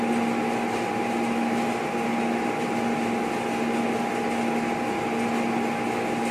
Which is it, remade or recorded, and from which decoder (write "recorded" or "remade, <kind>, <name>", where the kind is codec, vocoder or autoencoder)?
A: recorded